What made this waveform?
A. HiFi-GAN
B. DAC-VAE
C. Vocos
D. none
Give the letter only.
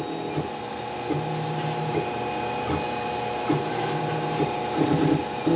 D